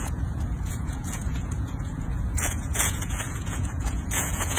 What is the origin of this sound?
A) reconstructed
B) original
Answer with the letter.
A